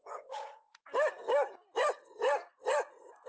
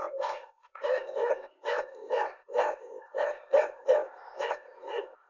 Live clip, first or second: first